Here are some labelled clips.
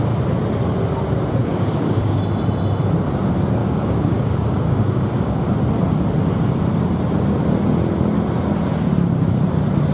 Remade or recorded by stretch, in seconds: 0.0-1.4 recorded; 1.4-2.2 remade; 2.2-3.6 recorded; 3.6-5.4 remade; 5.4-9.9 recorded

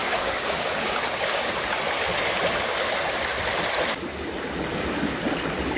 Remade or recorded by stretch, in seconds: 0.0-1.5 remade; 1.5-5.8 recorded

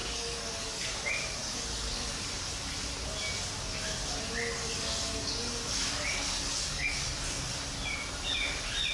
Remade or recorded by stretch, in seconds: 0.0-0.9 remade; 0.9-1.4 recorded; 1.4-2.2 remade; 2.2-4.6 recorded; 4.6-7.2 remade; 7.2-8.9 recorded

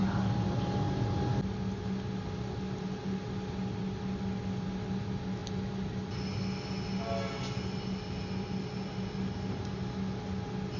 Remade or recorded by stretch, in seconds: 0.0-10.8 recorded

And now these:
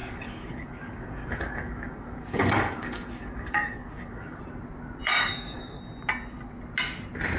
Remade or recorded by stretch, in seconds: 0.0-4.4 remade; 4.4-5.0 recorded; 5.0-5.8 remade; 5.8-7.4 recorded

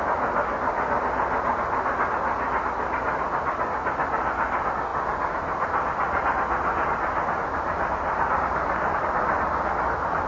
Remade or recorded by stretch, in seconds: 0.0-10.3 recorded